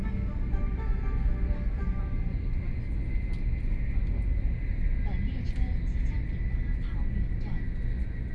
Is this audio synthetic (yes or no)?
no